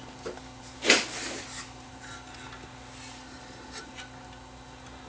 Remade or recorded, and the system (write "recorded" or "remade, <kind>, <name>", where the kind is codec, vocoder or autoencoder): recorded